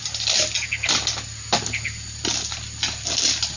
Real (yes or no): yes